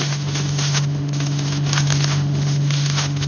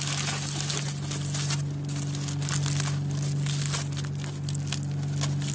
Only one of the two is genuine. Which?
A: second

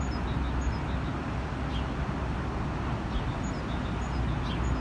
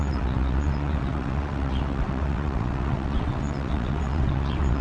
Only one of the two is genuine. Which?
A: first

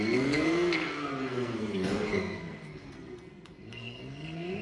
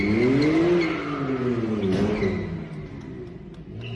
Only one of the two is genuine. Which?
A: second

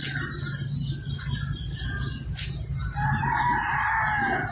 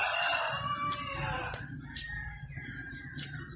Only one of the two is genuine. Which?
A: first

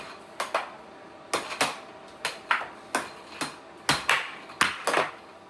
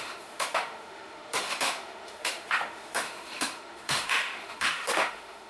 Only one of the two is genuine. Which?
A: first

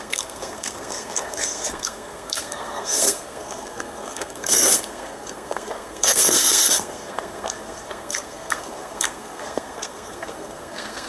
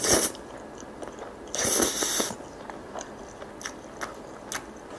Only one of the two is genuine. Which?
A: second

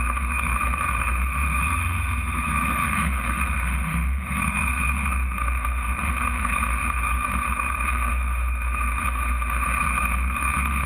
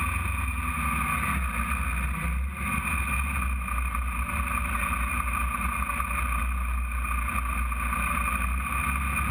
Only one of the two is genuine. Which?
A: second